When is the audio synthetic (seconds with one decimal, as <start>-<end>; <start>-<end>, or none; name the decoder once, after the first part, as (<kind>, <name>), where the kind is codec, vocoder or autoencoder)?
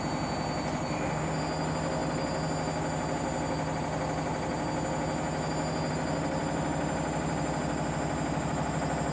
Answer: none